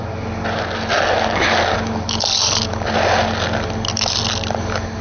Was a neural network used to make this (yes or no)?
no